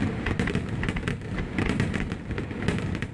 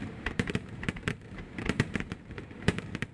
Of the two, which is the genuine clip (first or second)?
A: first